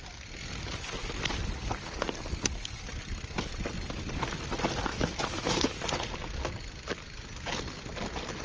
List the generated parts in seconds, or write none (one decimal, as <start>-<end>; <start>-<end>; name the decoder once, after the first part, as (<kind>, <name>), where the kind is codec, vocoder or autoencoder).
4.9-5.8 (autoencoder, DAC-VAE)